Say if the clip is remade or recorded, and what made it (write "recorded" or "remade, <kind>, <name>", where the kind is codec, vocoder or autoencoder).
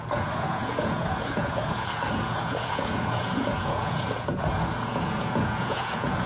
remade, vocoder, Vocos